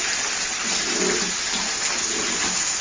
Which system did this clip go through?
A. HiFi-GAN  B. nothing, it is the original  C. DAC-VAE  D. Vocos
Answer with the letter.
B